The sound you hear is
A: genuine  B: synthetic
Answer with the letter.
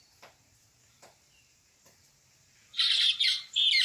B